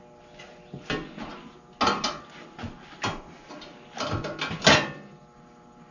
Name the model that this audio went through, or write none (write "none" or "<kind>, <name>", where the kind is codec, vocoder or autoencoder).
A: none